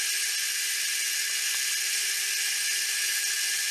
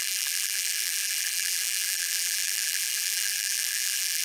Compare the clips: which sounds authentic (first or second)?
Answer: first